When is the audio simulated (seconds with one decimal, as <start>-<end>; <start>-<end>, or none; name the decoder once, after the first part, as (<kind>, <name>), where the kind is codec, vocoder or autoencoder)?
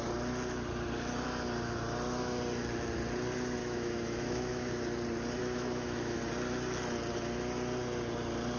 3.6-4.8 (autoencoder, DAC-VAE); 5.4-6.2